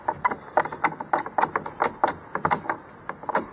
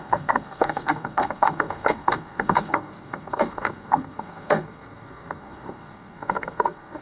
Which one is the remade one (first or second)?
second